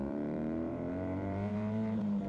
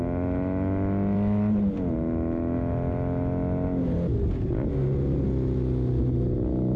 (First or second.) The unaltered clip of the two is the second